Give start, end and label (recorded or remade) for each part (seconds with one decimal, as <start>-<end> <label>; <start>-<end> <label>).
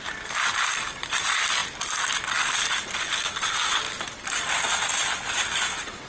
0.0-6.1 recorded